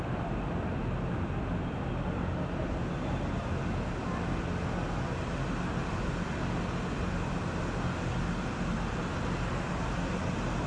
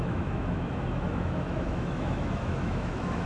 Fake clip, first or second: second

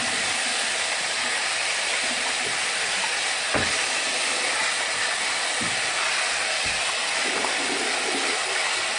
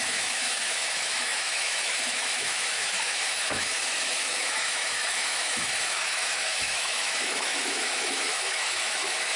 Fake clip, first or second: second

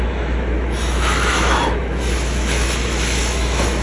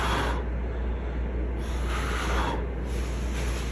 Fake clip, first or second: first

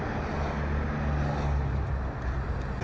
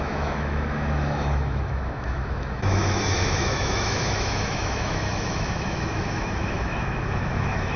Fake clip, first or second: second